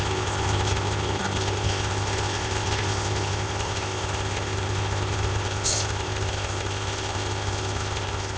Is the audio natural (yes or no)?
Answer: no